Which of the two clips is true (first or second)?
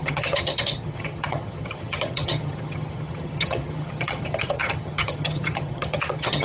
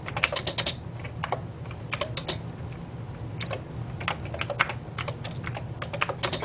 second